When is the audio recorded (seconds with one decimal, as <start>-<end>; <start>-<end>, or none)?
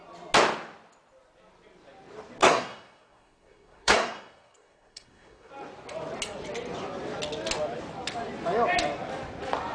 0.0-2.4; 5.5-9.7